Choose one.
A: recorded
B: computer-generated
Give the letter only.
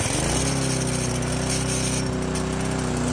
A